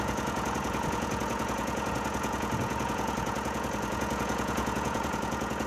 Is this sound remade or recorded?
remade